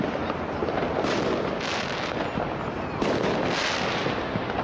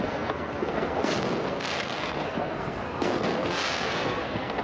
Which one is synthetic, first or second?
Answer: second